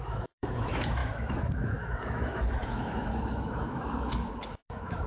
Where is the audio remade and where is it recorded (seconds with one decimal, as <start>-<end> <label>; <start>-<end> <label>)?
0.0-5.1 remade